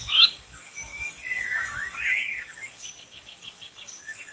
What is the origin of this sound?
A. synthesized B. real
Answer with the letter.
A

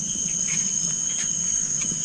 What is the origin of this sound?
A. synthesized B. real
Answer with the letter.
B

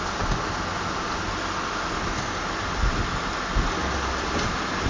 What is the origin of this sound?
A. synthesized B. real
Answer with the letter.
B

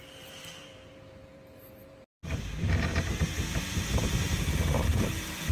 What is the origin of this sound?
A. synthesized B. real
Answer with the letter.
A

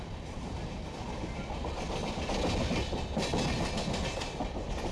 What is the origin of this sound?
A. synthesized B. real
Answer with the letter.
B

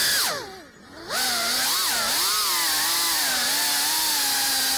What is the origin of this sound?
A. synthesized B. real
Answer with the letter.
B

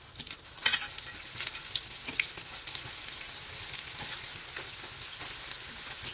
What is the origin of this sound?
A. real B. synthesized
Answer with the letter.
A